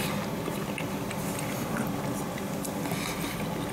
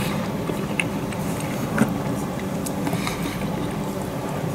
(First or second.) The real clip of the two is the first